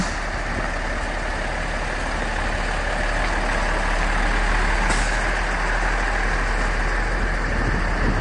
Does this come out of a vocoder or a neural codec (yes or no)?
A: no